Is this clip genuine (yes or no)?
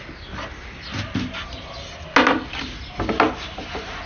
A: yes